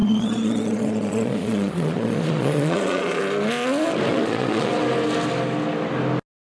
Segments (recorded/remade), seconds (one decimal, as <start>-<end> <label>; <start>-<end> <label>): 0.0-3.2 remade; 3.2-4.1 recorded; 4.1-4.7 remade; 4.7-6.4 recorded